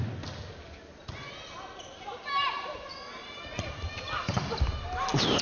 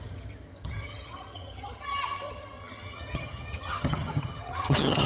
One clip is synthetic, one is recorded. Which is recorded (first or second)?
first